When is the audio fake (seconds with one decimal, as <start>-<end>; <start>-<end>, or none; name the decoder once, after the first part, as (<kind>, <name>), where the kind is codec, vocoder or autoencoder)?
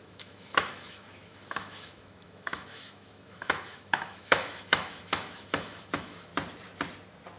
0.0-6.3 (autoencoder, DAC-VAE)